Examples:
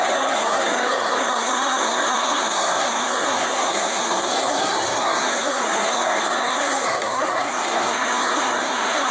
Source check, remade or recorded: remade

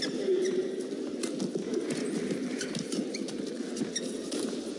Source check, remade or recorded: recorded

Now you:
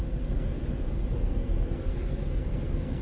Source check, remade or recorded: remade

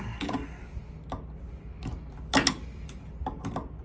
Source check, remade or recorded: recorded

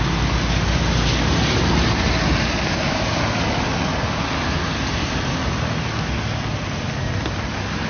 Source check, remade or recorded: recorded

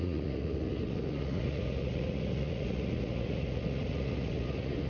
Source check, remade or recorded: remade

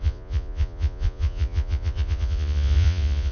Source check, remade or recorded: remade